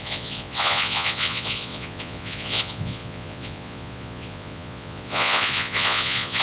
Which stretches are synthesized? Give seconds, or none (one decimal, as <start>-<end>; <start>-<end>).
0.0-6.4